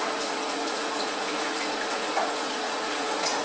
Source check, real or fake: fake